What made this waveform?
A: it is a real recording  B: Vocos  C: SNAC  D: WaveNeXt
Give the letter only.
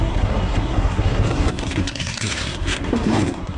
C